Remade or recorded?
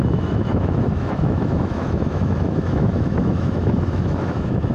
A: remade